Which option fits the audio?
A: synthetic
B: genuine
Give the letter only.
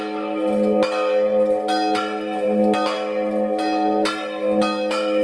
B